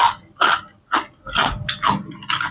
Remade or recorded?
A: recorded